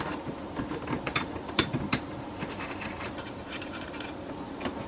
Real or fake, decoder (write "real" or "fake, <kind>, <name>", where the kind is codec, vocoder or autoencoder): real